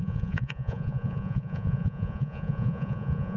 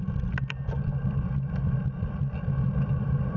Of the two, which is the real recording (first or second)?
second